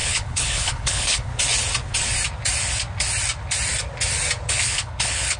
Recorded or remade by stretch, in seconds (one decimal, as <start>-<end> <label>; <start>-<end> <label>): 0.0-1.3 remade; 1.3-4.5 recorded; 4.5-5.4 remade